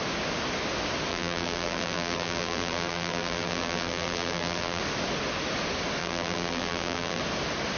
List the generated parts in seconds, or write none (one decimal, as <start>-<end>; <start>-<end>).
1.1-4.8; 6.0-7.2